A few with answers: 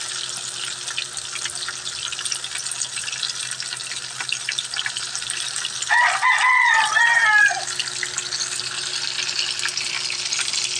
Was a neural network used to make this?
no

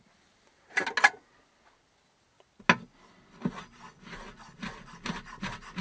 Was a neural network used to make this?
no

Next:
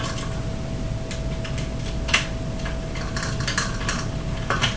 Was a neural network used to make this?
no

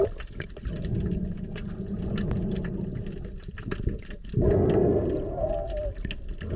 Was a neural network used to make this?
no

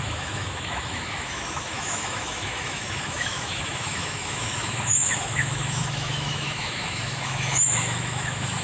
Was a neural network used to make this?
yes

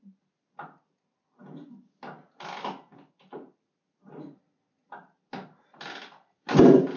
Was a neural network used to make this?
no